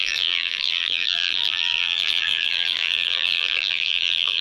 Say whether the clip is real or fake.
fake